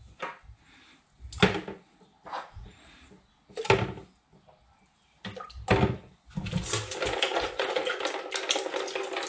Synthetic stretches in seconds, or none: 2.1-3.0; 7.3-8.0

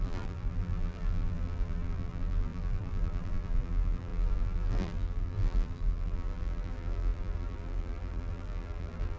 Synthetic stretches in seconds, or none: 0.0-9.2

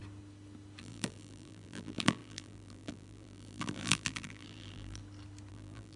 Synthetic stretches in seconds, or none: 0.8-5.0; 5.5-6.0

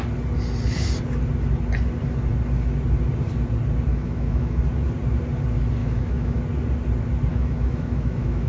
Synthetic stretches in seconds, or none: 3.9-4.6; 5.8-6.4; 7.3-8.5

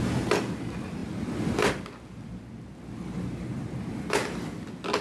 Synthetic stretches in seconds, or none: none

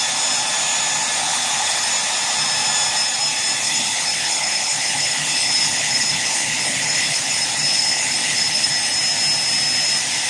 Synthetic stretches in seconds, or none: 1.2-1.9; 3.6-8.7

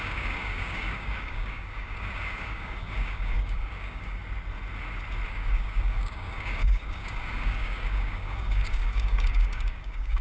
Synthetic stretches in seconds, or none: 0.0-4.2; 5.3-10.2